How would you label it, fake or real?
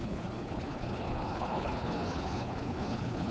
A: fake